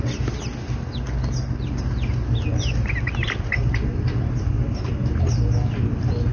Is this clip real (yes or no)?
yes